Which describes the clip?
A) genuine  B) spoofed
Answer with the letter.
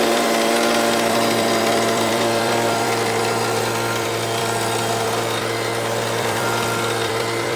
B